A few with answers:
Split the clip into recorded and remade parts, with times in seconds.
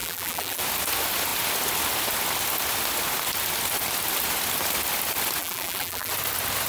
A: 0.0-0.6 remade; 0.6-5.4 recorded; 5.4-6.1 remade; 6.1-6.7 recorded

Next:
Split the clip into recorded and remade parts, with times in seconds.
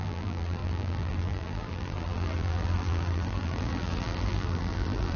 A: 0.0-5.2 remade